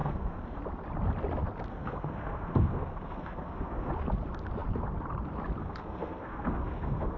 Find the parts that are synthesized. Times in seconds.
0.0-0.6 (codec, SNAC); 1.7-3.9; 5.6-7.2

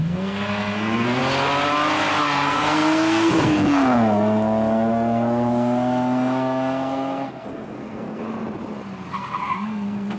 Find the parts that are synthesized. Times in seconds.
0.0-1.2 (codec, SNAC); 2.2-8.2; 9.1-10.2

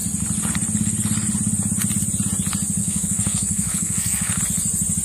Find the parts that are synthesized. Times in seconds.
2.8-4.4 (codec, SNAC)

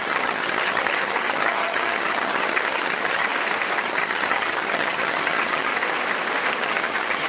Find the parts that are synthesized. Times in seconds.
0.0-3.3 (vocoder, HiFi-GAN); 3.8-5.7; 6.6-7.3

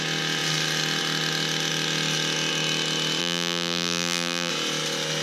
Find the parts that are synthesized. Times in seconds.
3.2-4.5 (vocoder, BigVGAN v2)

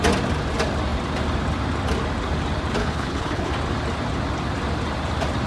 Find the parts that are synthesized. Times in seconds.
2.8-3.5 (codec, HILCodec)

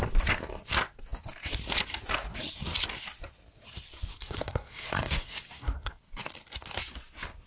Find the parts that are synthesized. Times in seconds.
4.1-6.0 (codec, SNAC)

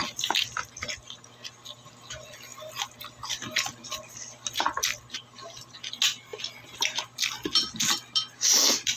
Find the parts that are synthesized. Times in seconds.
2.5-4.6 (vocoder, BigVGAN v2)